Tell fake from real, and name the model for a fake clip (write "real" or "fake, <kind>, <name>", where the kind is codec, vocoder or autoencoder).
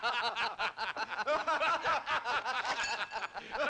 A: real